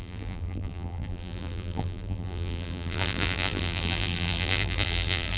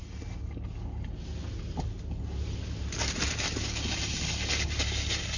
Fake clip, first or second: first